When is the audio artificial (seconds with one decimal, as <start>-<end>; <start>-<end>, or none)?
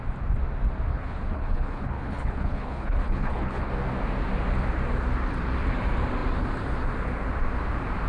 0.9-3.7